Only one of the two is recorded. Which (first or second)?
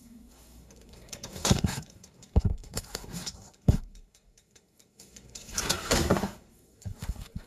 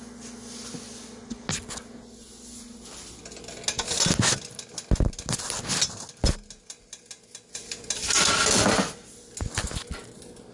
second